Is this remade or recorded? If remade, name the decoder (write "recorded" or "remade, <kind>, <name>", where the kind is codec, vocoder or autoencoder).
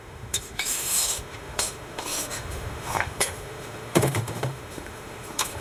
remade, autoencoder, DAC-VAE